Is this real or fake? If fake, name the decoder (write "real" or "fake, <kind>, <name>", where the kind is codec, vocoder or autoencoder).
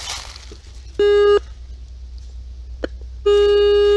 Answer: real